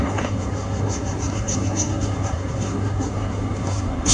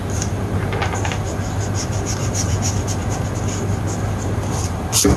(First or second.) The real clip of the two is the second